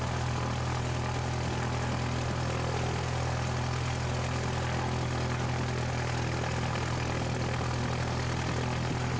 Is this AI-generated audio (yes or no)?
no